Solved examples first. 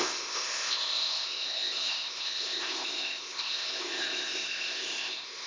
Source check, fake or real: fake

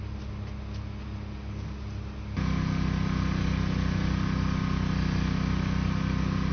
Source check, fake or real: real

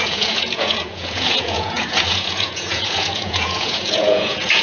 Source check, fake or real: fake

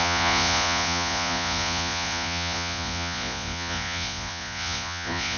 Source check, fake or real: fake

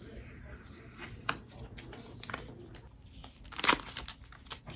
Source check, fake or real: real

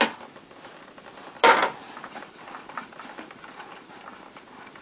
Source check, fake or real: real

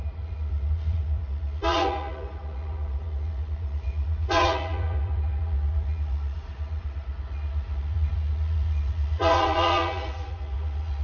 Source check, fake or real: fake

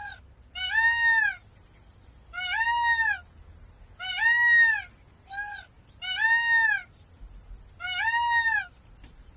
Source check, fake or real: real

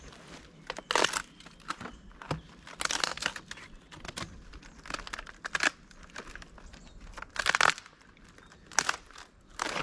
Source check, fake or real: real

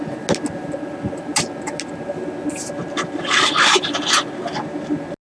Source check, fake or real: real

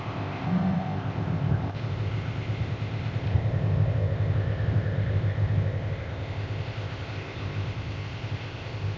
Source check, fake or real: fake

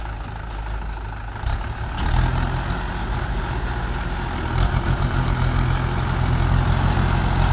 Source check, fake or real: real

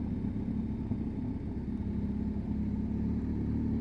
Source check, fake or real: real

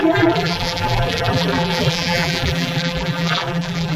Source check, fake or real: fake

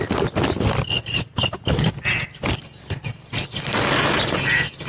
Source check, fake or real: real